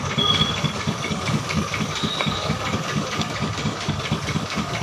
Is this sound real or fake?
fake